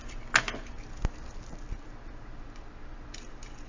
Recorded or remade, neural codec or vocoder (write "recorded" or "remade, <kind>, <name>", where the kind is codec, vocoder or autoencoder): recorded